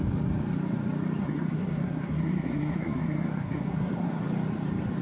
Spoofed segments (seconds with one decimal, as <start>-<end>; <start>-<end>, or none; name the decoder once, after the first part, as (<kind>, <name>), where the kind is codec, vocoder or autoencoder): 1.2-4.2 (codec, SNAC)